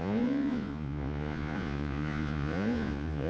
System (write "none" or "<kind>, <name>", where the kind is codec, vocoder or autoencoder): vocoder, Vocos